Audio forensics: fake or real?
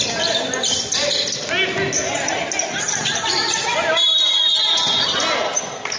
real